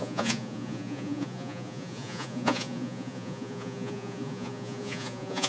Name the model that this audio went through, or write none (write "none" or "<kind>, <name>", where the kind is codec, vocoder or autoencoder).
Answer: vocoder, Vocos